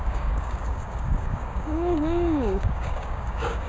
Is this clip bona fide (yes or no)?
no